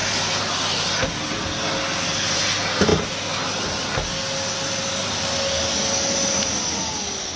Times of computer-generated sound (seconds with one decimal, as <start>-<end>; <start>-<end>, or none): none